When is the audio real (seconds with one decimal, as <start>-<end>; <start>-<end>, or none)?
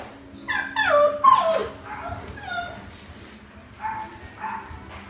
0.0-5.1